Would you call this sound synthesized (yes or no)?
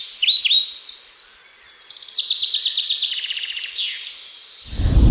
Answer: no